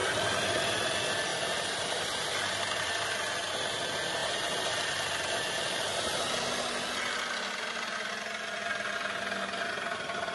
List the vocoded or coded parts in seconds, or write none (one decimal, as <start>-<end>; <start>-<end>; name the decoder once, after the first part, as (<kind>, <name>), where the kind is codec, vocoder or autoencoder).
0.0-0.6 (vocoder, BigVGAN v2); 1.3-3.1; 4.2-6.2